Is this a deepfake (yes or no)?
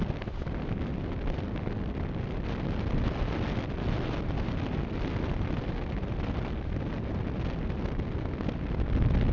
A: no